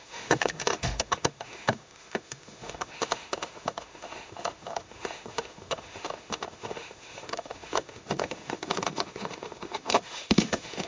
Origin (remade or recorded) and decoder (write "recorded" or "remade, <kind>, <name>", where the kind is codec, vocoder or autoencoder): remade, autoencoder, DAC-VAE